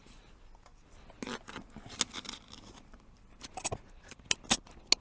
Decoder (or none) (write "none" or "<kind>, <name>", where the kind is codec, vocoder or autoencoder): none